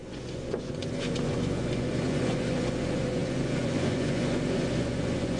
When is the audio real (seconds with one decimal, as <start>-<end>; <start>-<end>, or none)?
none

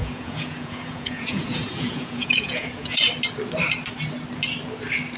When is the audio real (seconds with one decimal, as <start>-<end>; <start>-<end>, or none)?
3.1-5.2

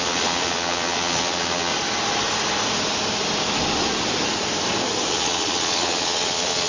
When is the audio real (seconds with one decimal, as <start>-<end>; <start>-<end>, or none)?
1.7-5.1

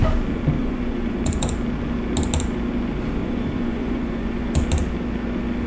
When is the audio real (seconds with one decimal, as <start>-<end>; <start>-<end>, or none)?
0.0-0.6; 1.5-3.2; 4.6-5.7

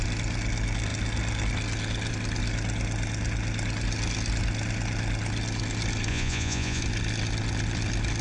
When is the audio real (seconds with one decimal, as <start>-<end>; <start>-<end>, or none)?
0.0-6.1; 6.8-8.2

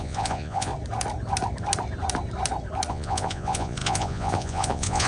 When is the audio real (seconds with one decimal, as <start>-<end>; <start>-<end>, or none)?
0.7-2.9

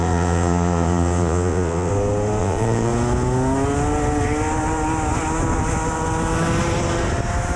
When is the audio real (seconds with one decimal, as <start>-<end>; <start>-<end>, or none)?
1.9-2.4; 2.9-7.6